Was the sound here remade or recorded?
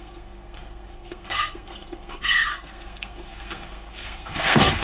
remade